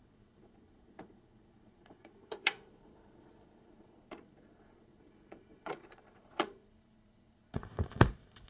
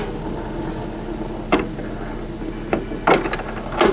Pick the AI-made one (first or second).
first